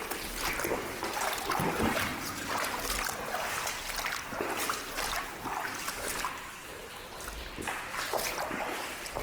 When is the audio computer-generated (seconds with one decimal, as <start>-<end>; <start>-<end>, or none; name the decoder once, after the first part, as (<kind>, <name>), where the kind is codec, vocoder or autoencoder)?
0.0-2.1 (vocoder, BigVGAN v2); 4.2-5.5; 6.1-6.7; 7.9-9.2